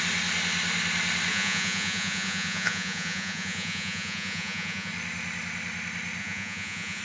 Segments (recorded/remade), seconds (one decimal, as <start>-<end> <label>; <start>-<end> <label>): 0.0-1.3 recorded; 1.3-4.9 remade; 4.9-6.2 recorded; 6.2-7.0 remade